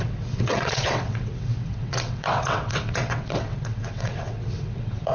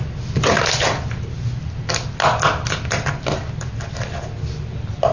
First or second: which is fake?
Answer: first